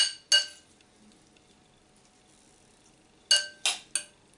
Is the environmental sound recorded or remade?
recorded